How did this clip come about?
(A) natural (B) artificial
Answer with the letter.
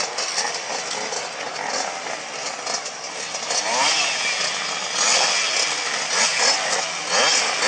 A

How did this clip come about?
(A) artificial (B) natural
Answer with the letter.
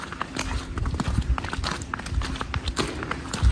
B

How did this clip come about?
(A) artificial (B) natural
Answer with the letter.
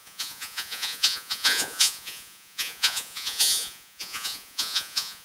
A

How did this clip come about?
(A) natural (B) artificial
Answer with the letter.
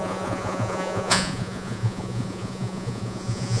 B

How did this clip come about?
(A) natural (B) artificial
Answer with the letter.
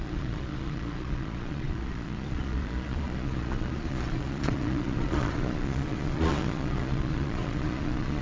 B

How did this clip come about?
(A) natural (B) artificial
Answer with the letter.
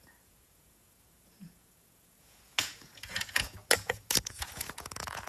B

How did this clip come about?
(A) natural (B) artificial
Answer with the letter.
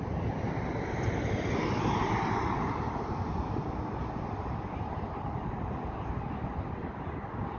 A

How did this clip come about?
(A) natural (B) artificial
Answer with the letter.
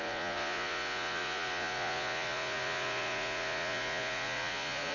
B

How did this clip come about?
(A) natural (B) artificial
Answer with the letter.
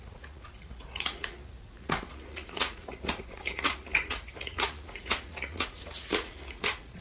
B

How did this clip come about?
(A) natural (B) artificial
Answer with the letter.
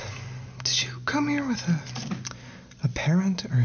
A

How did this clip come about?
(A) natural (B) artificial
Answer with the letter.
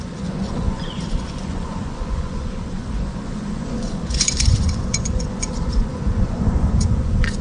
B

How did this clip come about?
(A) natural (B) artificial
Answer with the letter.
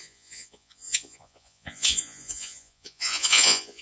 B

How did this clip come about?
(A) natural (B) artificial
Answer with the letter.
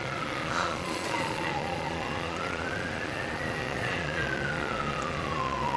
B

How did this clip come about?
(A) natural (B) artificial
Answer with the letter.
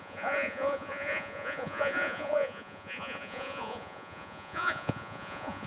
B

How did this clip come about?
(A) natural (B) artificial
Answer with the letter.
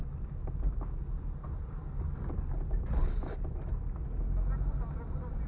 A